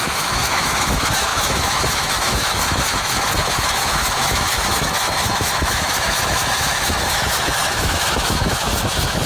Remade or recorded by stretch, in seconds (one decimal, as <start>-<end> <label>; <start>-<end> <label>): 0.0-9.3 remade